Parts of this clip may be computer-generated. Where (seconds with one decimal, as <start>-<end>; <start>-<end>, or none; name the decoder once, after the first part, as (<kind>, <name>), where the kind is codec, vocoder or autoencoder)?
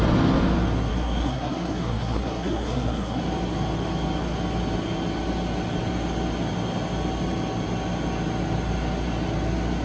0.9-3.2 (codec, SNAC)